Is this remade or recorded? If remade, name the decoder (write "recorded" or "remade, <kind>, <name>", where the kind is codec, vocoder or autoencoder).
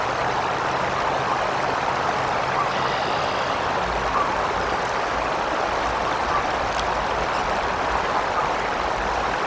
recorded